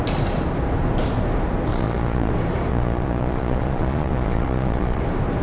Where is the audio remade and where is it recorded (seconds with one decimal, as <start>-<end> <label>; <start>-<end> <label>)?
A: 0.0-1.7 recorded; 1.7-2.3 remade; 2.3-2.7 recorded; 2.7-5.0 remade; 5.0-5.4 recorded